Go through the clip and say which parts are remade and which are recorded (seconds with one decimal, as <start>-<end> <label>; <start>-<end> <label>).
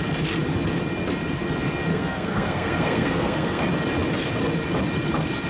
0.0-1.9 recorded; 1.9-3.6 remade; 3.6-5.5 recorded